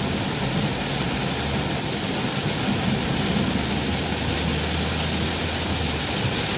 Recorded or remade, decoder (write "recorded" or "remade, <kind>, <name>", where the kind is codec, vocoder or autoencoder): recorded